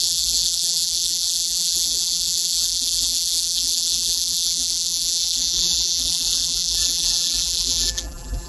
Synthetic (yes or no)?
yes